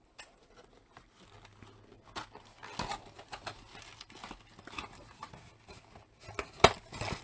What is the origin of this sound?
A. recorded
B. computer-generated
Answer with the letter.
A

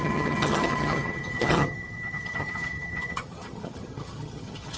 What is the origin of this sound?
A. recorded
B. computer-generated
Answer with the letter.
B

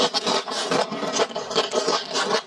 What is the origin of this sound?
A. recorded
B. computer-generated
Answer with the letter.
A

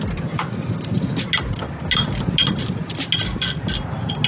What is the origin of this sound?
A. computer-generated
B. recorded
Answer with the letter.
B